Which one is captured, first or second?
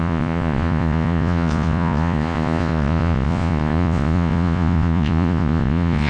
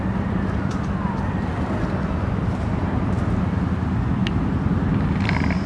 second